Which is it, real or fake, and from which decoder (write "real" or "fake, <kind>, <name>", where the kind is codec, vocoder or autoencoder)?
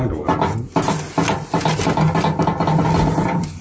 real